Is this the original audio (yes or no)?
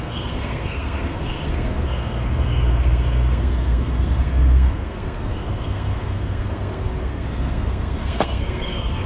no